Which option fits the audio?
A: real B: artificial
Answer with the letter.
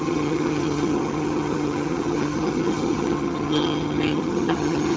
B